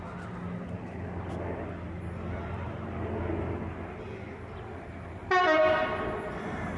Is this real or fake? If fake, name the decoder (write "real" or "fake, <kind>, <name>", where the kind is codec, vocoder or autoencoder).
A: real